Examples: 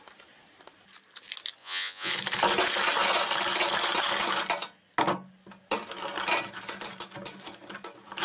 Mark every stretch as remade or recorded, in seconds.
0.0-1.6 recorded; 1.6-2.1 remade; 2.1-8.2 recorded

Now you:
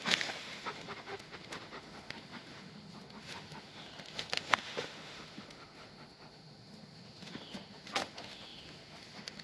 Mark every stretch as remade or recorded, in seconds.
0.0-9.4 remade

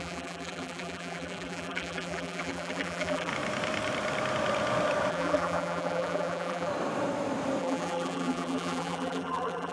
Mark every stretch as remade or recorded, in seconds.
0.0-3.3 remade; 3.3-5.1 recorded; 5.1-6.7 remade; 6.7-7.6 recorded; 7.6-9.7 remade

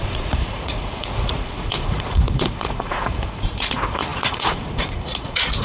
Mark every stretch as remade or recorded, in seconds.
0.0-5.6 remade

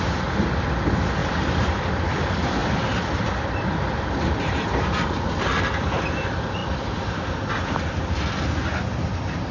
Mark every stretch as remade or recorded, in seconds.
0.0-1.2 recorded; 1.2-1.9 remade; 1.9-2.6 recorded; 2.6-4.8 remade; 4.8-6.6 recorded; 6.6-8.2 remade; 8.2-9.5 recorded

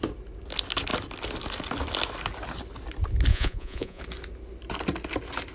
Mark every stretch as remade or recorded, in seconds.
0.0-3.3 recorded; 3.3-4.0 remade; 4.0-5.5 recorded